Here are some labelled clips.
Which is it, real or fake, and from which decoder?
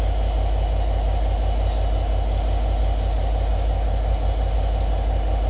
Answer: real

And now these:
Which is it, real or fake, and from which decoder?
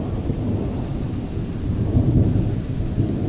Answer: real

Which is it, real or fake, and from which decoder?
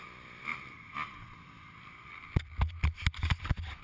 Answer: real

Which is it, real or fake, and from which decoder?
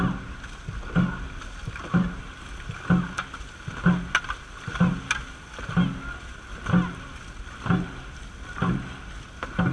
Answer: real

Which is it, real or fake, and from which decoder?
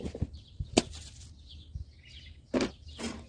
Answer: real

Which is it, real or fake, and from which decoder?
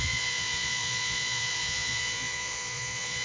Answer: fake, vocoder, Vocos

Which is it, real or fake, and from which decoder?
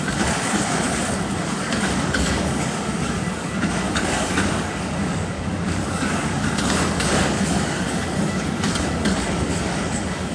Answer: fake, codec, DAC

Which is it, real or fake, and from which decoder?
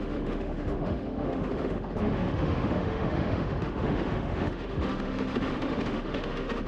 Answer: fake, autoencoder, DAC-VAE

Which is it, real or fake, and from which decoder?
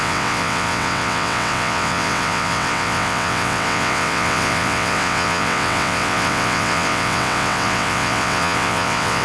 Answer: fake, vocoder, WaveNeXt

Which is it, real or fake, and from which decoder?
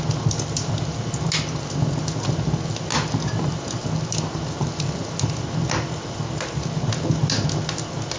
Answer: real